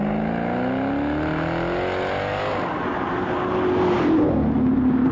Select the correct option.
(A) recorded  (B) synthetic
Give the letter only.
A